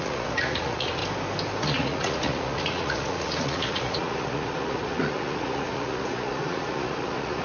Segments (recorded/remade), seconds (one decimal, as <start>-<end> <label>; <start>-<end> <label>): 0.0-1.0 remade; 1.0-1.6 recorded; 1.6-7.4 remade

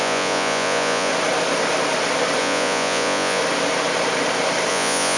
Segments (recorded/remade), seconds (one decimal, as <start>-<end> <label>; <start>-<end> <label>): 0.0-1.1 remade; 1.1-2.4 recorded; 2.4-3.4 remade; 3.4-4.7 recorded; 4.7-5.2 remade